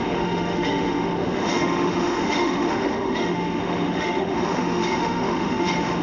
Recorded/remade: remade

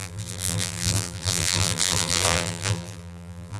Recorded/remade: remade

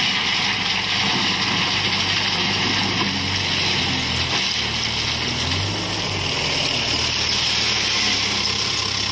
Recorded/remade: recorded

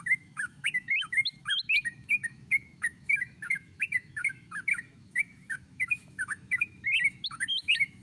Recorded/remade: remade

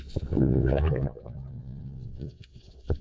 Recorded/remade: remade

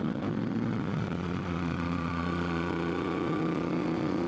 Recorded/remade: remade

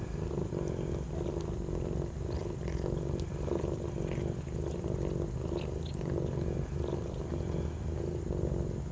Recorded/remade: recorded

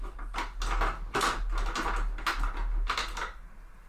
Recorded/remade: recorded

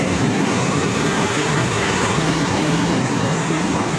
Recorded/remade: remade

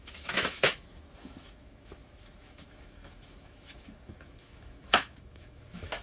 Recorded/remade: remade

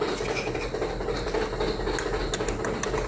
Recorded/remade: recorded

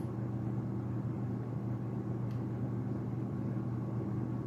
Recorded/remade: recorded